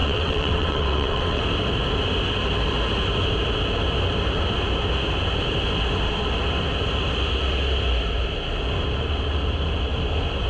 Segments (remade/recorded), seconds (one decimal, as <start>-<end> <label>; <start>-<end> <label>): 0.0-1.4 remade; 1.4-10.5 recorded